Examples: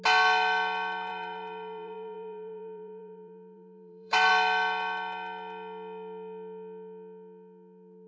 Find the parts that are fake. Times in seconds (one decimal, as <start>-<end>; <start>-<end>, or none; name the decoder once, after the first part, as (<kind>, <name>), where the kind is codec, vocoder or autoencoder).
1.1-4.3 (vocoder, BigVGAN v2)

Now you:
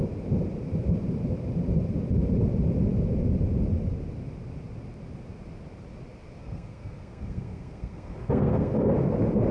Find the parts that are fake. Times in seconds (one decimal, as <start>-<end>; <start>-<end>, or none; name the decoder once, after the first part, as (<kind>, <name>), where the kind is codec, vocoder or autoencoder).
6.4-8.7 (codec, SNAC)

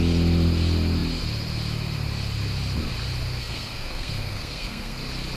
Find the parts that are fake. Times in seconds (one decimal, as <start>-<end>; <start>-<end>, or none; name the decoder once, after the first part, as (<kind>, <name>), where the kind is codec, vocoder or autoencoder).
3.4-5.0 (codec, SNAC)

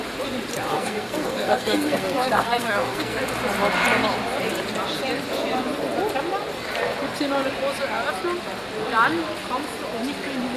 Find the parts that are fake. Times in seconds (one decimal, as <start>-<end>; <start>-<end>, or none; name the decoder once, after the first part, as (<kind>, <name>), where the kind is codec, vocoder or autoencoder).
0.7-3.2 (codec, SNAC)

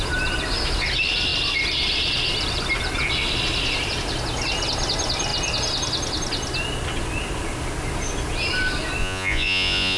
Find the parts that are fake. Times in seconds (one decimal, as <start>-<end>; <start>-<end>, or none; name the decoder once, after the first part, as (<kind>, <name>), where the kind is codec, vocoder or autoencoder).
9.0-10.0 (vocoder, Vocos)

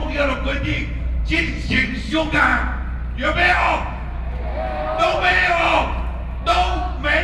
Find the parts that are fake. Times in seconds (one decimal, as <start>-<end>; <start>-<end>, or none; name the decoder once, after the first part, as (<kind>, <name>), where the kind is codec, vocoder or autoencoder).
0.0-2.5 (vocoder, BigVGAN v2); 5.1-6.1

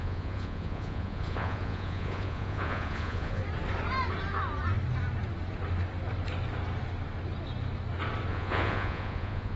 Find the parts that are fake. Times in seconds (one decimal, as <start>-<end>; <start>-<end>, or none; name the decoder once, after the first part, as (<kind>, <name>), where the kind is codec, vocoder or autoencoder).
0.0-3.4 (vocoder, Vocos); 8.3-9.6